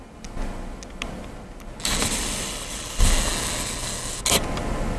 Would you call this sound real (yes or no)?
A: yes